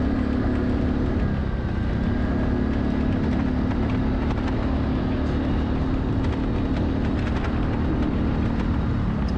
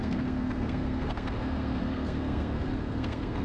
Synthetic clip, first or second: second